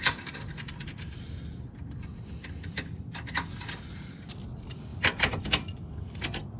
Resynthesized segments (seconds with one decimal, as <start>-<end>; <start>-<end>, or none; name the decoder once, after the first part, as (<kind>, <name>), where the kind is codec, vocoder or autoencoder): 0.0-0.5 (vocoder, BigVGAN v2); 4.9-5.4